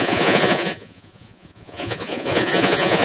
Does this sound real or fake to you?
fake